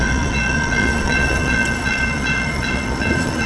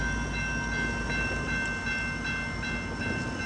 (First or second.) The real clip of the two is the second